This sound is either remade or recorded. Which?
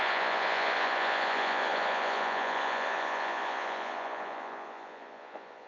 remade